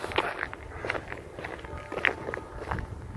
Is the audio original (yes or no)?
yes